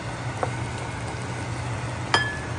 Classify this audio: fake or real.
real